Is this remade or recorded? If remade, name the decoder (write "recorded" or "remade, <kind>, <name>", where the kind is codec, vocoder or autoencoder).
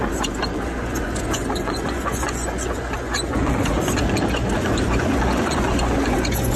remade, vocoder, Vocos